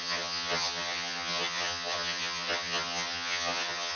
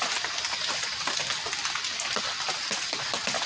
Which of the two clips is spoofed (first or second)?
first